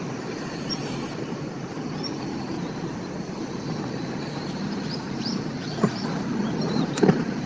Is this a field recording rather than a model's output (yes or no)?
yes